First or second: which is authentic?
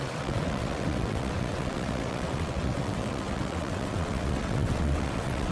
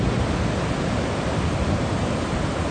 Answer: second